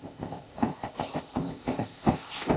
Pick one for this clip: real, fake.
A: fake